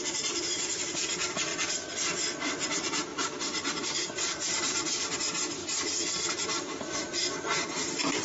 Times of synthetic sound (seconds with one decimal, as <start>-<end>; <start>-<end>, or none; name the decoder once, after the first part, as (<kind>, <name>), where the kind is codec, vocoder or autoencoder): 0.0-1.5 (vocoder, BigVGAN v2); 2.4-3.1; 4.1-5.6; 6.3-8.2

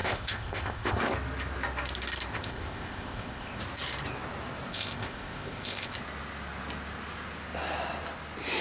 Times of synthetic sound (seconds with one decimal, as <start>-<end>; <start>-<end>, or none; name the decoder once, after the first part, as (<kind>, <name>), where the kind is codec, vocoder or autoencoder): 0.0-1.0 (codec, ZipCodec); 2.3-3.6; 4.7-6.0

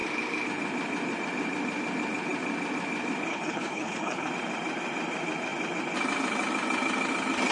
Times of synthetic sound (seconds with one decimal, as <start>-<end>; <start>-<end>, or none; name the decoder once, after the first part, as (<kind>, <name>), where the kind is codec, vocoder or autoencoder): 3.3-4.3 (codec, HILCodec)

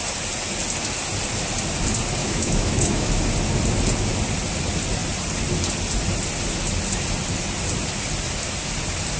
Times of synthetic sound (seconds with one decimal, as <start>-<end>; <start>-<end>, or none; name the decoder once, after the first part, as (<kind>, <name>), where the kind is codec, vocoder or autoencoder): 2.2-3.1 (autoencoder, DAC-VAE)

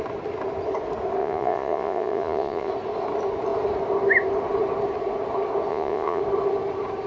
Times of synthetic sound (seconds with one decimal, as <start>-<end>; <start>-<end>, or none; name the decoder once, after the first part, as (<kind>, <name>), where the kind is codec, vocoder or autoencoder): 1.2-2.7 (vocoder, Vocos); 5.7-6.2

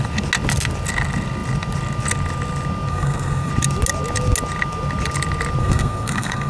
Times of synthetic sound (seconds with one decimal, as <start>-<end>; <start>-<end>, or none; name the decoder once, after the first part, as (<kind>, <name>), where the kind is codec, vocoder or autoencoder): 2.9-3.5 (codec, SNAC); 5.6-6.5

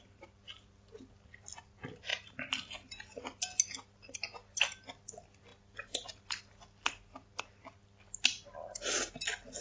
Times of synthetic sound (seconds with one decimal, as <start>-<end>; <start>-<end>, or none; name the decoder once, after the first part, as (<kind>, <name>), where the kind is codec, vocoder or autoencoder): none

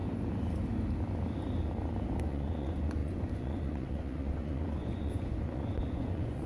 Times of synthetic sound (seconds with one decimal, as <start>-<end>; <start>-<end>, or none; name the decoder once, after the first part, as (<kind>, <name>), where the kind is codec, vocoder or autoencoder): 2.2-6.5 (vocoder, Vocos)